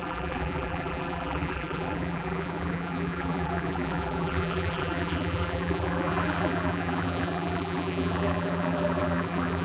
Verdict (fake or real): fake